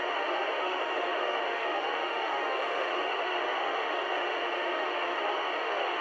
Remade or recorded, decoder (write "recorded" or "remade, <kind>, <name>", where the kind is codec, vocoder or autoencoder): remade, autoencoder, DAC-VAE